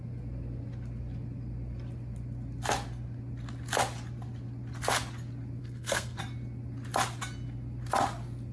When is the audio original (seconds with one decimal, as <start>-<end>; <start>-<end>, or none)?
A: 0.0-5.6; 6.2-8.5